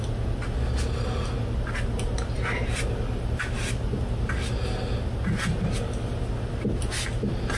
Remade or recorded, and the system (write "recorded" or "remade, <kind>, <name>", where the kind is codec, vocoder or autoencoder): recorded